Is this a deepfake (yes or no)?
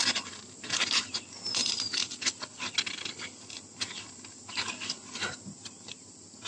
no